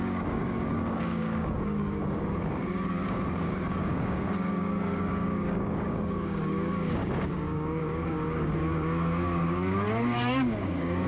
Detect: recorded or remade remade